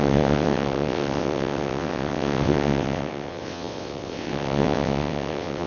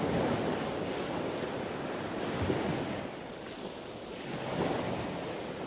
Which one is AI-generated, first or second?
first